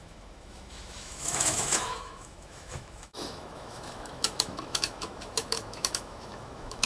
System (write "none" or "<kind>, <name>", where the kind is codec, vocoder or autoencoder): autoencoder, DAC-VAE